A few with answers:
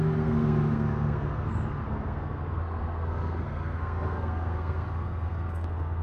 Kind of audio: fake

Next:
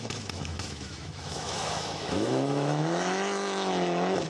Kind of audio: fake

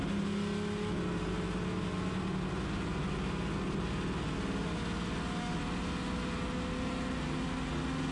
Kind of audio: real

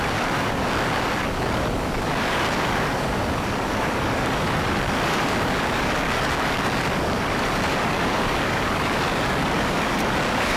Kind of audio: fake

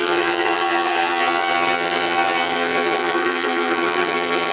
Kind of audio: fake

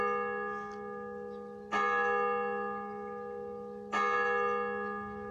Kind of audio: real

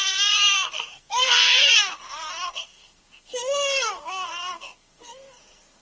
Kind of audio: fake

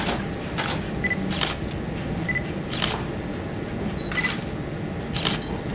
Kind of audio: real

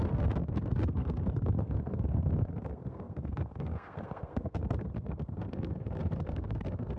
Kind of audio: fake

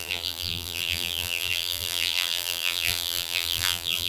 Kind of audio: fake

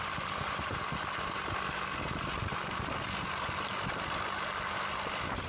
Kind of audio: real